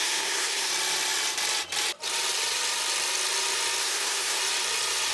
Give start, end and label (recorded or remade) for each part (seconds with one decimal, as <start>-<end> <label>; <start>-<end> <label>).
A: 0.0-0.7 remade; 0.7-3.8 recorded; 3.8-4.4 remade; 4.4-5.1 recorded